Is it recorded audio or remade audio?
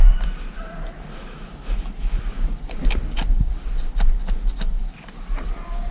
recorded